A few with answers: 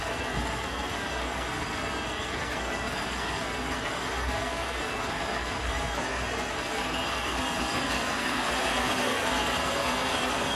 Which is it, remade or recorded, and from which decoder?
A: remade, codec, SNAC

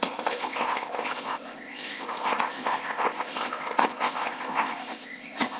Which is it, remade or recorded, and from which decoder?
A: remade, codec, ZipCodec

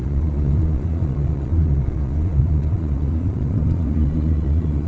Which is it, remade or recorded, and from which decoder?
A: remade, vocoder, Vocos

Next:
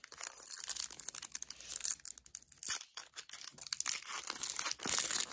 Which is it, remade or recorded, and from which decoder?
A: recorded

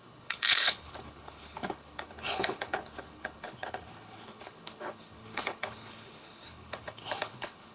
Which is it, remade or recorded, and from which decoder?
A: remade, codec, HILCodec